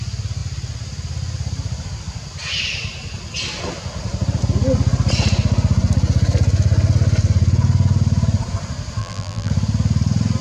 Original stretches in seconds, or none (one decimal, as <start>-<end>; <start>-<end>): 0.0-9.0; 9.5-10.4